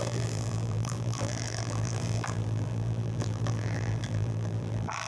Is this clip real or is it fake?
fake